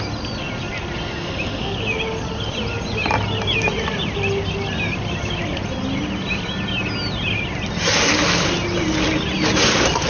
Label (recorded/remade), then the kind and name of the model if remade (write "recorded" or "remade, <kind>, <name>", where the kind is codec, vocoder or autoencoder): recorded